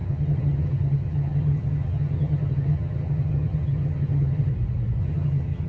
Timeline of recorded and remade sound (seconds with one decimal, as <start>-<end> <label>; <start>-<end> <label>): 0.0-4.5 remade; 4.5-5.0 recorded; 5.0-5.7 remade